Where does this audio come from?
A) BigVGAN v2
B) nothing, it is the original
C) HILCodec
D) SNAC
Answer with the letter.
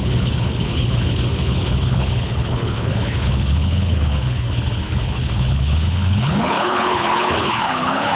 C